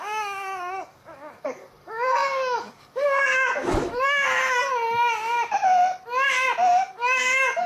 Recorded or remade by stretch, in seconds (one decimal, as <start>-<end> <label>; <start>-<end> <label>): 0.0-4.8 remade; 4.8-6.7 recorded; 6.7-7.7 remade

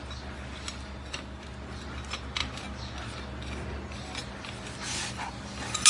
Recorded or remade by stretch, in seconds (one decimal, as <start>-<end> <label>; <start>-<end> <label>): 0.0-5.9 recorded